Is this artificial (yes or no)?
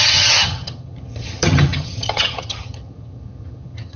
yes